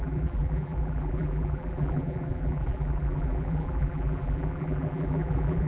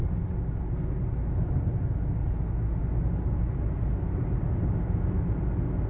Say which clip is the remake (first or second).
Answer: first